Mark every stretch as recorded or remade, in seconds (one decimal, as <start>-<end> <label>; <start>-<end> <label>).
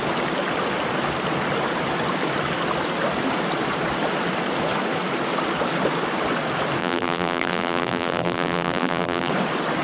0.0-6.8 recorded; 6.8-9.3 remade; 9.3-9.8 recorded